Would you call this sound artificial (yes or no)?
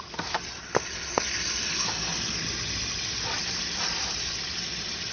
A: no